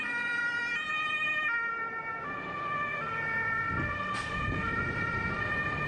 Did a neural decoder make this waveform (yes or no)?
no